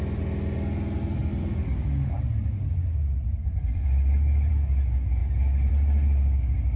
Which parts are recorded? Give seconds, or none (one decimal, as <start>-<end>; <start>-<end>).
0.0-1.2; 4.5-6.8

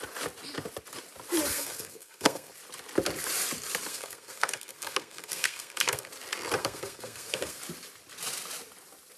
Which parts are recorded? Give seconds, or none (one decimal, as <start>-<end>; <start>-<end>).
0.0-1.5; 2.5-3.9; 6.1-6.6; 7.6-9.2

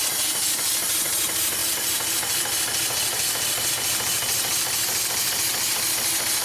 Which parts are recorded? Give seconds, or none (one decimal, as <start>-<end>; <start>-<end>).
0.0-1.6; 3.7-6.4

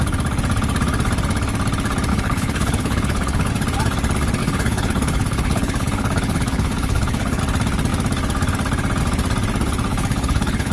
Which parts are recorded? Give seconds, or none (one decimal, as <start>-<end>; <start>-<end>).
0.0-2.1; 3.5-4.4; 7.4-9.9